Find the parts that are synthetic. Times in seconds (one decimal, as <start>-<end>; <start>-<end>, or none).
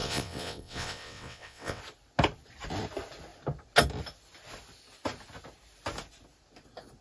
0.0-1.8